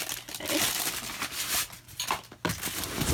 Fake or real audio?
real